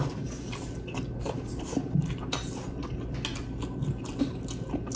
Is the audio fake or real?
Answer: real